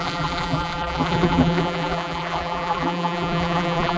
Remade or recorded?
remade